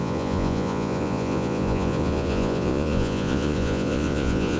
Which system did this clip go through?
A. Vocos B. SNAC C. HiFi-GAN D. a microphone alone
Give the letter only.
A